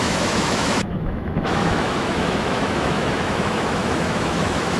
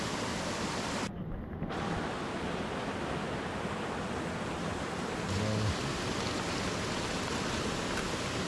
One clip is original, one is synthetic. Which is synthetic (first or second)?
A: first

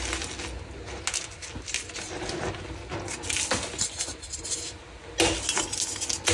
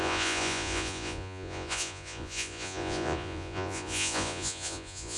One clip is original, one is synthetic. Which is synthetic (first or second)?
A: second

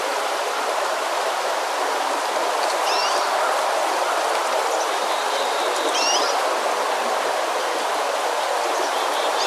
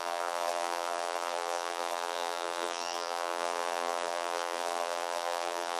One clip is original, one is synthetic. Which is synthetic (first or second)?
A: second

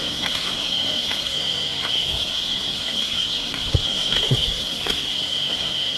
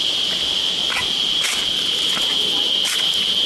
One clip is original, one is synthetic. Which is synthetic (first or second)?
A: first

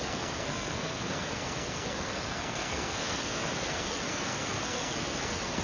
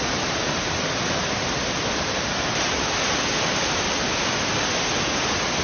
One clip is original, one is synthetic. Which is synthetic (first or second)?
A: first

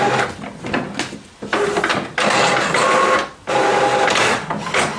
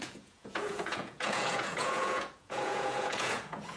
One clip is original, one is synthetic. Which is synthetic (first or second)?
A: second